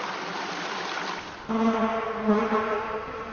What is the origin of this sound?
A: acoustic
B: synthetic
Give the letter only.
A